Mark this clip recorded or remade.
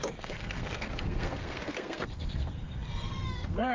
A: remade